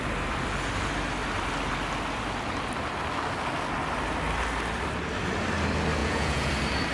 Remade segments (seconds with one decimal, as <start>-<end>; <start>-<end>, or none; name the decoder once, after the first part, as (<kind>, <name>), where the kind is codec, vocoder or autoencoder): 6.0-6.5 (vocoder, Vocos)